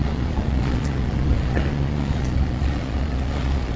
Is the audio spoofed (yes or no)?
yes